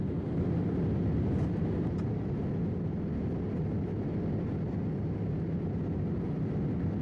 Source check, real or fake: real